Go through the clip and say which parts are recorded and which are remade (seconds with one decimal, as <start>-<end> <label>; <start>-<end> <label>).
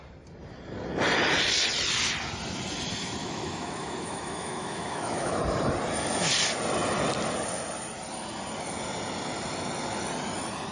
0.0-3.2 recorded; 3.2-5.4 remade; 5.4-10.7 recorded